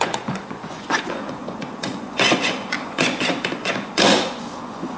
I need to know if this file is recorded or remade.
remade